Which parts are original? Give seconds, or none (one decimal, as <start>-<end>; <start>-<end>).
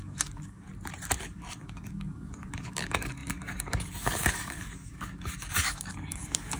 0.7-1.2